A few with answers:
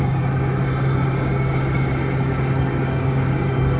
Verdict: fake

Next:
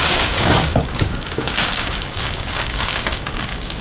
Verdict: fake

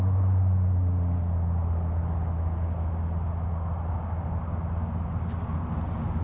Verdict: real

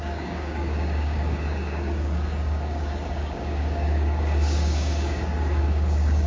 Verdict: fake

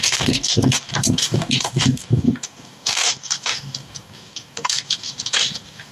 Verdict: fake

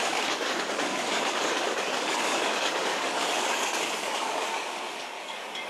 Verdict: fake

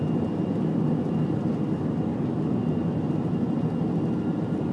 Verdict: real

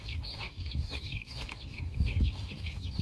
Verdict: fake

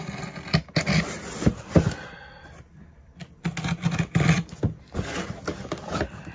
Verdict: real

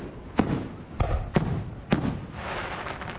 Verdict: real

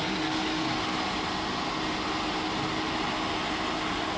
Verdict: real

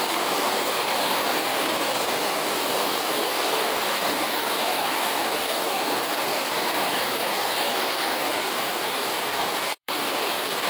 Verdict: fake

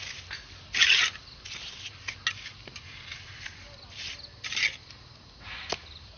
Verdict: real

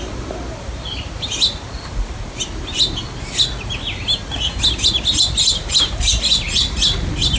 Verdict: real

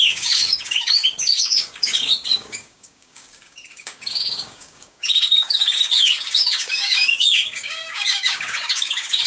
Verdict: fake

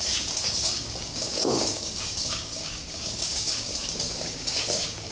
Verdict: fake